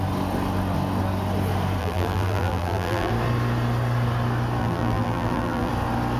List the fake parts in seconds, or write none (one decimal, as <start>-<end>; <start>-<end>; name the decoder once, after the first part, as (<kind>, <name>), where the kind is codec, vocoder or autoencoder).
1.8-3.1 (vocoder, BigVGAN v2); 4.6-5.7